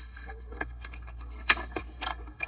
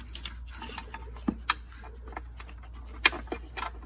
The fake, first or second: first